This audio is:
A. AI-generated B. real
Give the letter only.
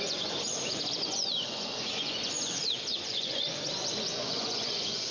A